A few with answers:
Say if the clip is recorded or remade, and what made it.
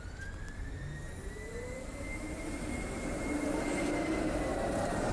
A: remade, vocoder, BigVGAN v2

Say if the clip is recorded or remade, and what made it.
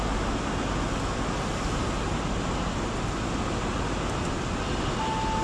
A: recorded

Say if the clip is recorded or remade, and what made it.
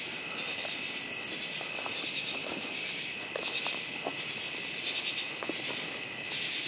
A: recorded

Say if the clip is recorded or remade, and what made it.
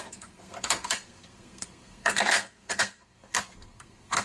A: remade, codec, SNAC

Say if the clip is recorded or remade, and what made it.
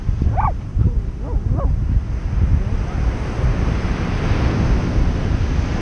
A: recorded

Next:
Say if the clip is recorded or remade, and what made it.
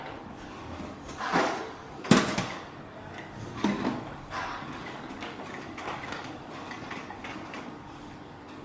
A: remade, codec, DAC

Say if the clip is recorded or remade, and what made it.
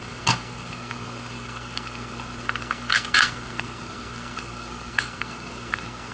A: remade, codec, SNAC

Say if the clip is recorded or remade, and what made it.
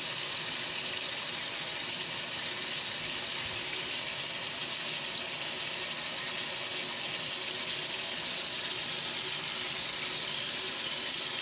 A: recorded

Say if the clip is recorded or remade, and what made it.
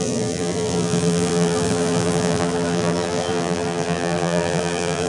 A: remade, vocoder, BigVGAN v2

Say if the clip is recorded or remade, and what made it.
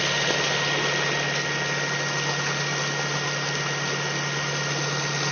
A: recorded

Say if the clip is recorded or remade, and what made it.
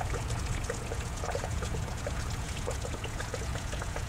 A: remade, vocoder, Vocos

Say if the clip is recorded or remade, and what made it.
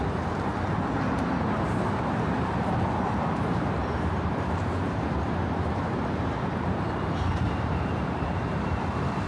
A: remade, vocoder, BigVGAN v2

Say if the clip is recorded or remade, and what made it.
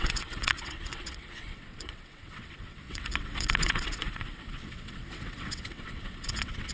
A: remade, vocoder, WaveNeXt